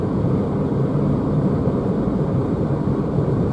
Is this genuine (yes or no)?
no